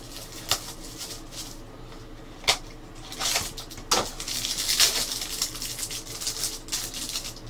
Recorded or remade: recorded